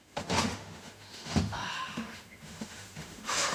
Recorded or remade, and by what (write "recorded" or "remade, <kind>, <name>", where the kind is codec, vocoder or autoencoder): remade, autoencoder, DAC-VAE